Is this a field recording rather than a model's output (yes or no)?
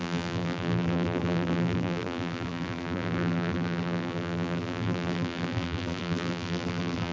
no